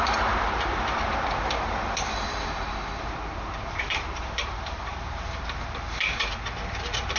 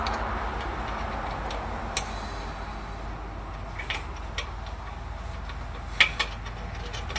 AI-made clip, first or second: first